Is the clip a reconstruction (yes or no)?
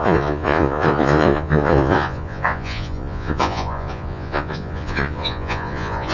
yes